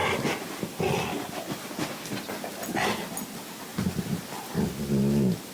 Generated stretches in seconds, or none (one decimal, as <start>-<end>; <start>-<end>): none